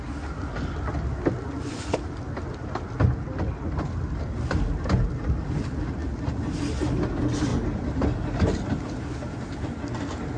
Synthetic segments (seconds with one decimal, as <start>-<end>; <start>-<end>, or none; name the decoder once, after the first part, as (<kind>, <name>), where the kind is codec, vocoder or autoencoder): 7.5-8.7 (vocoder, BigVGAN v2)